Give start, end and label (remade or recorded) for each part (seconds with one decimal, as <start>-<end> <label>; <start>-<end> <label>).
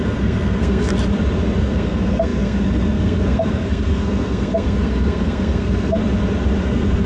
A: 0.0-0.9 remade; 0.9-1.6 recorded; 1.6-6.0 remade; 6.0-6.6 recorded; 6.6-7.1 remade